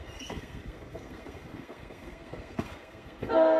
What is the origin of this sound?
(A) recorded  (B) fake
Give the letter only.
B